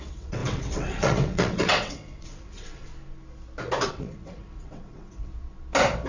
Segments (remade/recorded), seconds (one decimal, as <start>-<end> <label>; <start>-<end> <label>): 0.0-2.9 remade; 2.9-3.9 recorded; 3.9-5.3 remade; 5.3-6.1 recorded